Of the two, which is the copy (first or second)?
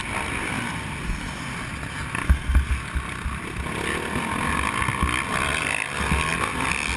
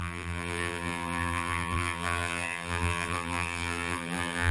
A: second